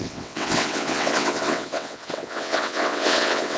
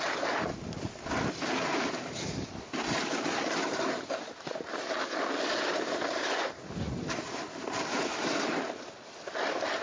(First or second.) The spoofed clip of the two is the first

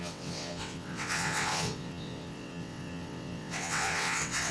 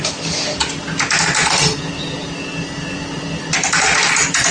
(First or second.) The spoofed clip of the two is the first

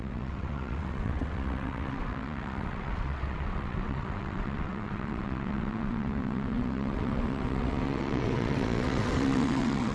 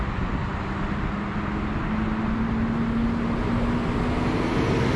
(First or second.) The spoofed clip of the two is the first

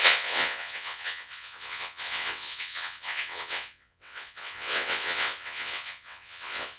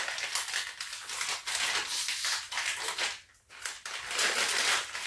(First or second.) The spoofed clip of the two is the first